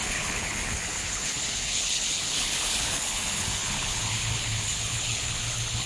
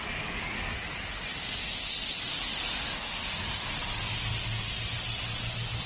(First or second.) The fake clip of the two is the first